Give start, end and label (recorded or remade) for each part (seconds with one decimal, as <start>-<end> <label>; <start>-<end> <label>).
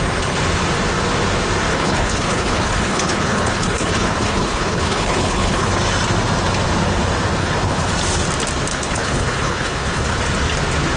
0.0-1.7 recorded; 1.7-5.7 remade; 5.7-7.4 recorded; 7.4-7.9 remade; 7.9-8.7 recorded; 8.7-10.2 remade; 10.2-11.0 recorded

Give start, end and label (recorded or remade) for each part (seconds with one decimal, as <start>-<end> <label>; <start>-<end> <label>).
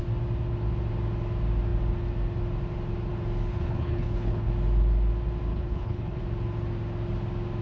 0.0-3.5 recorded; 3.5-4.5 remade; 4.5-5.5 recorded; 5.5-6.2 remade; 6.2-7.6 recorded